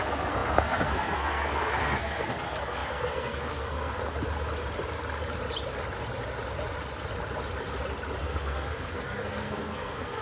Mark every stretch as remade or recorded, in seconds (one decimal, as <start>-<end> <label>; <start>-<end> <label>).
0.0-4.0 remade; 4.0-8.2 recorded; 8.2-10.2 remade